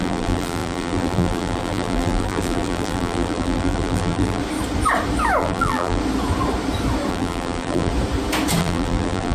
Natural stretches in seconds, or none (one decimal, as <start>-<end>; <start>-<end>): 4.4-5.4; 6.0-7.1; 7.9-8.6